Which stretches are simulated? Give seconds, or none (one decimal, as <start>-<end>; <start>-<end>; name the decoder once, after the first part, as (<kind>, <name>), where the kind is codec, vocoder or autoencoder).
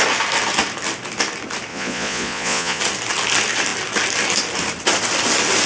1.7-2.8 (vocoder, Vocos)